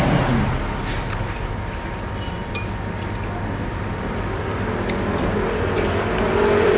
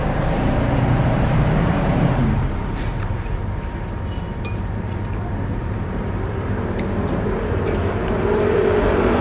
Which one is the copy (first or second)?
second